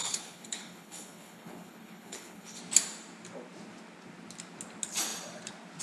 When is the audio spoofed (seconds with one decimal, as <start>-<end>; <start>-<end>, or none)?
0.0-2.6